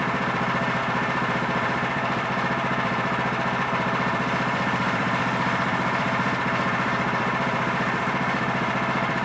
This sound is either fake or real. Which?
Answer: fake